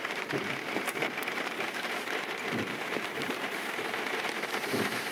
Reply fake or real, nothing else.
fake